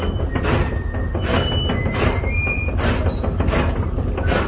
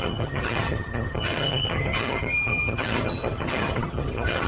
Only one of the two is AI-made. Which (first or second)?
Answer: second